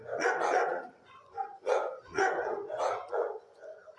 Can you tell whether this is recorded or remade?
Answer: remade